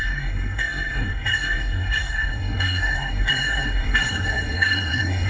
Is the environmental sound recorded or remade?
remade